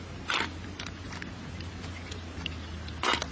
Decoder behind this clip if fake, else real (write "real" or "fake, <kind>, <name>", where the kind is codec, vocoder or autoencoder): real